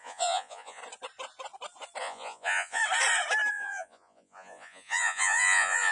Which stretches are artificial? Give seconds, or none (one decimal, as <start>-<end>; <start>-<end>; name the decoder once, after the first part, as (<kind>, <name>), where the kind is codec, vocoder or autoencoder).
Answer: 0.0-0.8 (vocoder, Vocos); 2.0-2.8; 3.5-5.9